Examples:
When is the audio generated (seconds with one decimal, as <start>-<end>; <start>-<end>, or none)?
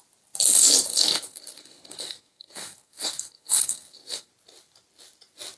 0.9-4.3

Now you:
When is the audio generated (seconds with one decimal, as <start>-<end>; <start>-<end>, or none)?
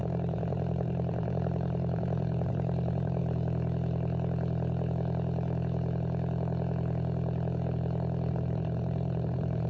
0.0-3.2; 8.3-9.7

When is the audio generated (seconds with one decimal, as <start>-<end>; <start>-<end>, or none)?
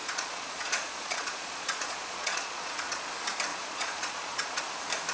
0.0-3.1; 3.5-4.6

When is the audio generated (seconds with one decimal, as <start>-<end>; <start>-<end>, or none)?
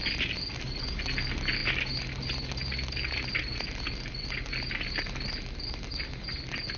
none